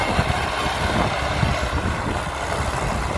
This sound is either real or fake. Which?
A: real